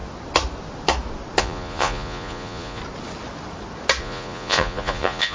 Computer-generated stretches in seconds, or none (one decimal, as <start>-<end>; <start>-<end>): 1.4-2.8; 4.0-5.3